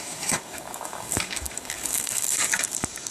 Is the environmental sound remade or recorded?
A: remade